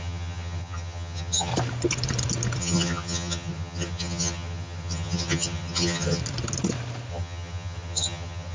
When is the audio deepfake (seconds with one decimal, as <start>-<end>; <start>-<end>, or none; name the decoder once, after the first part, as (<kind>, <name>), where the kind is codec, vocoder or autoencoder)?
0.0-1.5 (vocoder, HiFi-GAN); 2.6-6.2; 7.1-8.5